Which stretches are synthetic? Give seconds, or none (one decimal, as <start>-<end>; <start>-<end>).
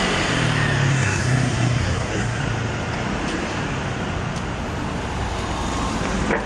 0.9-2.4